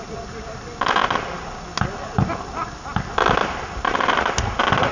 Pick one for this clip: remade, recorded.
recorded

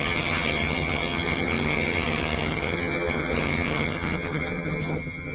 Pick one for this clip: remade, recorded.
remade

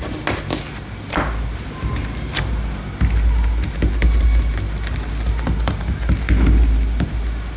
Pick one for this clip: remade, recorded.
recorded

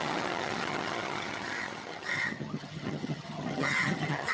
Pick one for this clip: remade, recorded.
remade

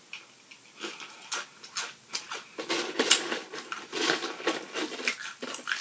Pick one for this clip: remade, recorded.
recorded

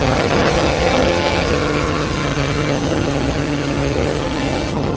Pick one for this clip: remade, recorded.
remade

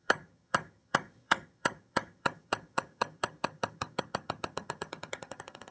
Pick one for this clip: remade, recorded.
remade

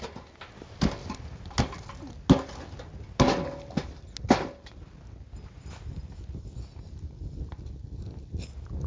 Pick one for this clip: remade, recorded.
recorded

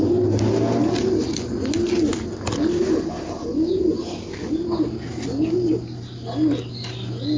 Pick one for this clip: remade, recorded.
recorded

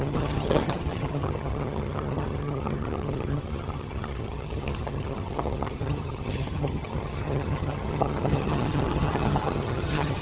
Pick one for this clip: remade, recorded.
remade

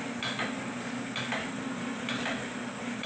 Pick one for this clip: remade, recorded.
recorded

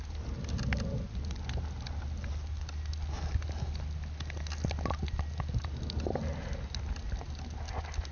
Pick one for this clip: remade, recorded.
recorded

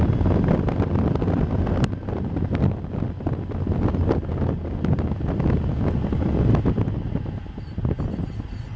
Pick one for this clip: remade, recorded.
recorded